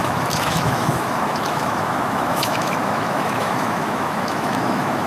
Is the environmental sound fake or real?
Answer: fake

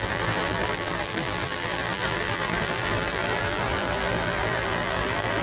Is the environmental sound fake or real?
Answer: fake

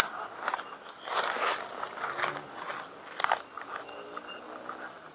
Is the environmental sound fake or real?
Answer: real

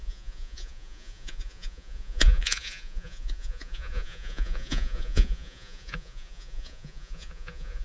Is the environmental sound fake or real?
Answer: fake